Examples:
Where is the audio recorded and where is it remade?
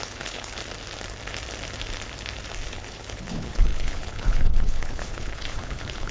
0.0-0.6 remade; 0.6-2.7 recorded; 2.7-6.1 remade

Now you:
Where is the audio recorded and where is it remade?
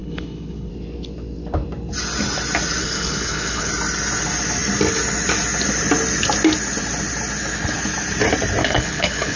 0.0-0.7 remade; 0.7-2.8 recorded; 2.8-3.7 remade; 3.7-8.6 recorded; 8.6-9.4 remade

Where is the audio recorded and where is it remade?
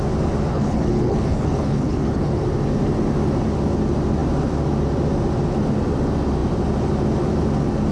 0.0-0.5 recorded; 0.5-2.4 remade; 2.4-7.9 recorded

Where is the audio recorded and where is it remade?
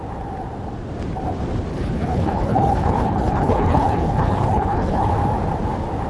0.0-1.7 recorded; 1.7-5.1 remade; 5.1-6.1 recorded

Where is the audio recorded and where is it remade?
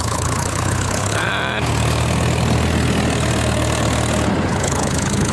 0.0-1.3 remade; 1.3-4.5 recorded; 4.5-5.3 remade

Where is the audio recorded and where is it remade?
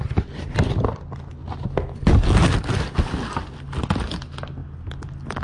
0.0-5.4 recorded